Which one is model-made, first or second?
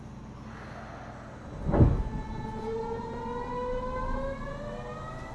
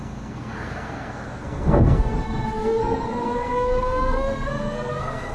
second